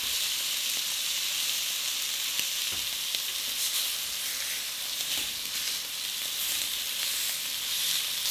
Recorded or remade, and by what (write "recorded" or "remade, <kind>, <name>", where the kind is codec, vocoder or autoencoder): recorded